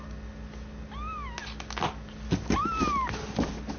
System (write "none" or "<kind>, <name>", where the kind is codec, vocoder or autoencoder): none